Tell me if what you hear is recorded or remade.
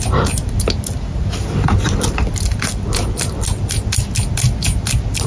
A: recorded